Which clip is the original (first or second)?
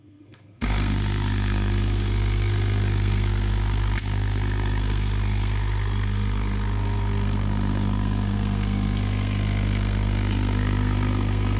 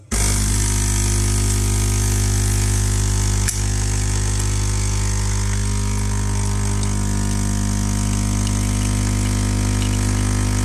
second